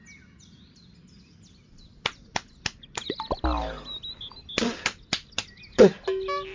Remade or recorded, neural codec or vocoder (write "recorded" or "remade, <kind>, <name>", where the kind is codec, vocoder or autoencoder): recorded